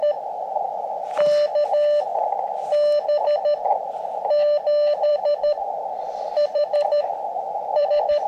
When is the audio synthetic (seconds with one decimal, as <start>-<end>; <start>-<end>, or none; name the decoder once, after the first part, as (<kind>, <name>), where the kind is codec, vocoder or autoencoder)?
2.1-2.6 (vocoder, BigVGAN v2); 5.1-7.9